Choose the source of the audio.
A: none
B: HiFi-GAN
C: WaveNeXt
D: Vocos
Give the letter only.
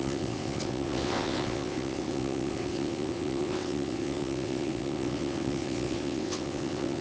C